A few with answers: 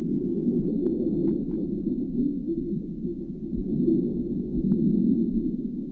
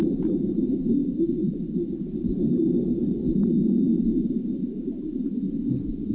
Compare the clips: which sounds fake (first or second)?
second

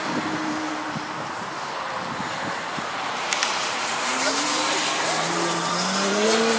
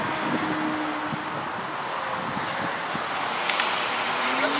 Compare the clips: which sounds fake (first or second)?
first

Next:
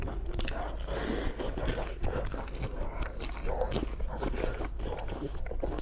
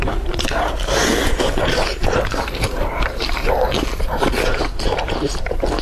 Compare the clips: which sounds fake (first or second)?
second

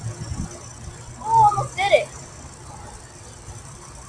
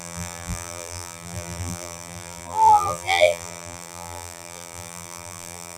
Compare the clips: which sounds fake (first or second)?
second